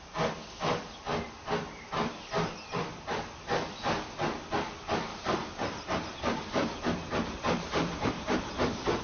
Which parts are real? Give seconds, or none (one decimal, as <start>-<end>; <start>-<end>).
0.0-5.1